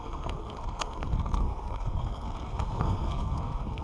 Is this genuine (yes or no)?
no